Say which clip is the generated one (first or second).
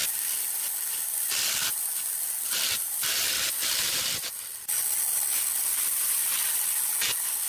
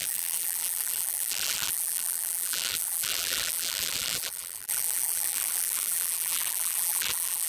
second